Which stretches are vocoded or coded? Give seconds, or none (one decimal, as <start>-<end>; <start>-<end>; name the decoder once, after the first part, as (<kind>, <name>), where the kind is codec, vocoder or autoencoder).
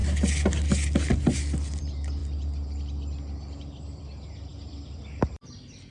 4.5-5.5 (vocoder, BigVGAN v2)